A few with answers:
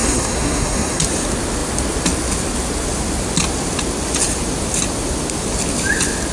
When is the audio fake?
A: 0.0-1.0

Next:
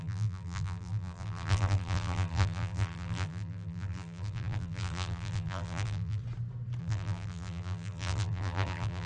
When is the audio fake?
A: 0.0-6.2; 6.8-9.1

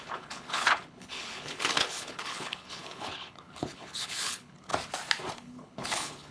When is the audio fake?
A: 0.0-4.7; 5.3-6.3

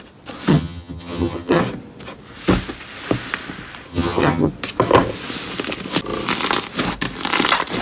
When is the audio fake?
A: 0.5-1.6; 3.9-4.5

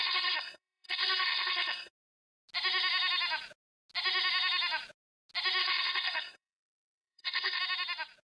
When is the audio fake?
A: 0.0-1.9; 5.6-7.6